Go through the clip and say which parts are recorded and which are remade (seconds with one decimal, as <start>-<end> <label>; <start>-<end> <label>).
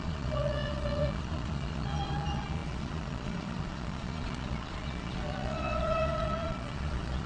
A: 0.0-7.3 remade